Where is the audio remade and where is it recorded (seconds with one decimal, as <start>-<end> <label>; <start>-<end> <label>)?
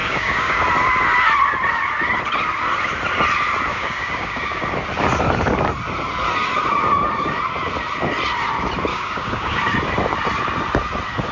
0.0-0.6 remade; 0.6-3.7 recorded; 3.7-4.6 remade; 4.6-8.9 recorded; 8.9-9.6 remade; 9.6-11.3 recorded